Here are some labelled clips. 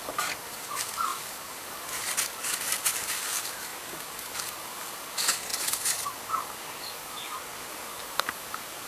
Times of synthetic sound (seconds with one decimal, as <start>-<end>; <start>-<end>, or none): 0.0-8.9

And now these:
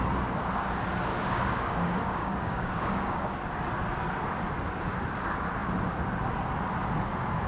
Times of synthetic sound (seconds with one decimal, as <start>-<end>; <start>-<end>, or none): 1.1-3.2

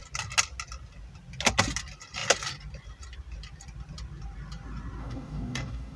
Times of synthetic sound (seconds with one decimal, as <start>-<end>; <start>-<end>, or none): 5.0-6.0

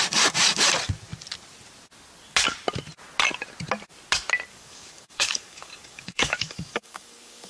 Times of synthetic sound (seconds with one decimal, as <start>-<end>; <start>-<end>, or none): 4.5-7.5

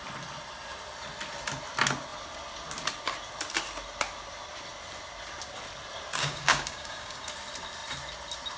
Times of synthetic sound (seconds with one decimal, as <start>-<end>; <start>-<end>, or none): 6.2-7.3

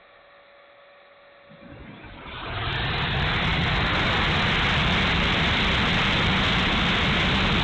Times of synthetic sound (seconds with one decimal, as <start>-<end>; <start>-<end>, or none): none

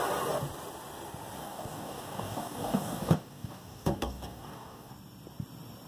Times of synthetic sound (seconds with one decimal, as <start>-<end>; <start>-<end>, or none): 1.4-4.9